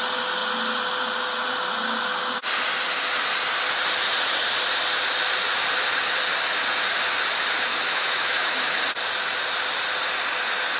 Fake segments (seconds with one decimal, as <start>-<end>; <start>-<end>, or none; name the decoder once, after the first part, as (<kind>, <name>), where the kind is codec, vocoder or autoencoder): 7.7-8.8 (autoencoder, DAC-VAE)